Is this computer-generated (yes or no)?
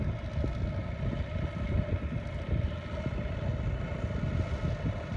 no